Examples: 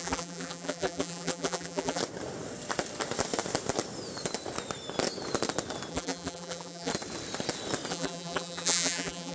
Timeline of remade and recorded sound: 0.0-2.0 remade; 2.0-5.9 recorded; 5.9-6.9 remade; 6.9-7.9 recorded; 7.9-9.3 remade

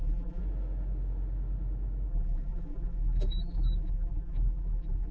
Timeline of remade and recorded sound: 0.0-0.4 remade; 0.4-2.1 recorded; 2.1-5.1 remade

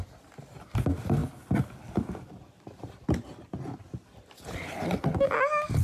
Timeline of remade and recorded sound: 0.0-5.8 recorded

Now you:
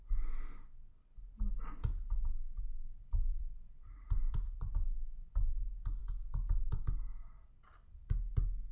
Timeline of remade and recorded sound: 0.0-1.8 recorded; 1.8-2.3 remade; 2.3-3.0 recorded; 3.0-5.5 remade; 5.5-8.7 recorded

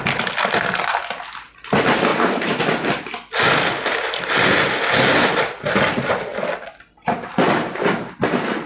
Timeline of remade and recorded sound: 0.0-2.1 recorded; 2.1-2.6 remade; 2.6-3.9 recorded; 3.9-4.7 remade; 4.7-8.7 recorded